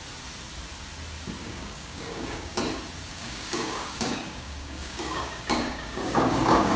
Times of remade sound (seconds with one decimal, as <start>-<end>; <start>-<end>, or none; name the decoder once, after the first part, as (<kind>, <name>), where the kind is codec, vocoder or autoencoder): 1.4-2.6 (codec, DAC); 3.1-6.8